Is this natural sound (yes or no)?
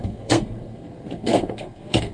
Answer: no